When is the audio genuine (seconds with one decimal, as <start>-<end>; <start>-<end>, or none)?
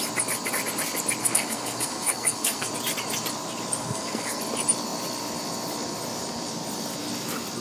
0.0-1.2; 2.7-3.8; 4.4-7.6